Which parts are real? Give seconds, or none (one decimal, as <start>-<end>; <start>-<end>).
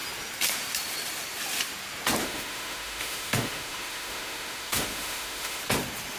0.0-2.2; 5.6-6.2